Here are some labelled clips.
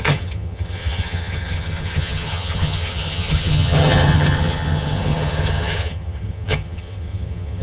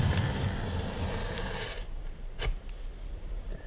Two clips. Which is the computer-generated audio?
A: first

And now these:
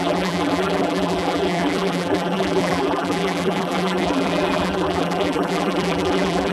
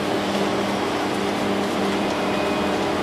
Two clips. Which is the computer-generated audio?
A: first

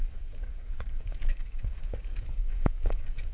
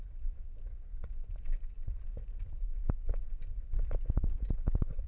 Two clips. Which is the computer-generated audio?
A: first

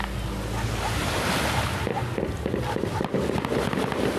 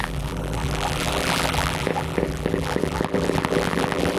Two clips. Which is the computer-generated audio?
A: second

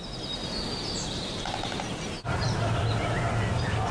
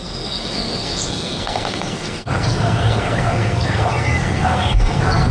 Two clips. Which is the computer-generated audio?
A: second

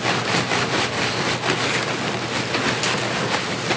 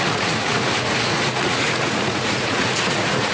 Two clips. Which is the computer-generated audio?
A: second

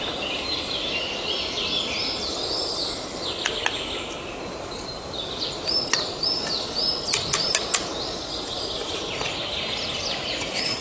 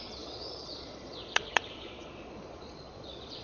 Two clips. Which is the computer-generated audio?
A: second